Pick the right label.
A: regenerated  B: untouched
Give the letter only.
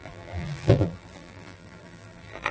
A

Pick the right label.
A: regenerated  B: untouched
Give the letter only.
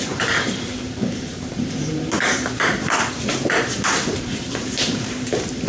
A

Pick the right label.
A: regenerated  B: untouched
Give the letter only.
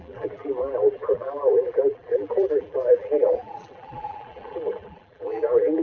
A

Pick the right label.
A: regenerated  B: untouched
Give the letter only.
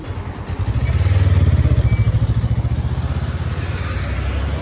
B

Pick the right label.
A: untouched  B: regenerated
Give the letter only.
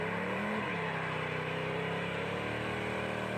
B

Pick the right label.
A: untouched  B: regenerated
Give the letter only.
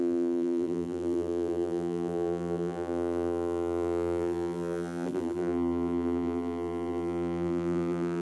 B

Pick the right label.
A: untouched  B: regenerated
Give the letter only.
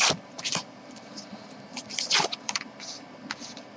B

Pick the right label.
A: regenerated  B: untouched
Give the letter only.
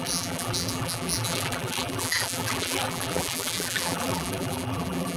A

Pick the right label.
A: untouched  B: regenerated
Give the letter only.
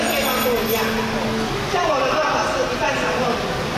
A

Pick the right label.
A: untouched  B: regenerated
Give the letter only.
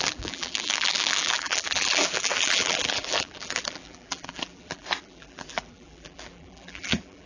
B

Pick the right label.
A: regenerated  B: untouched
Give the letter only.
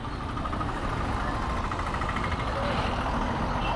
B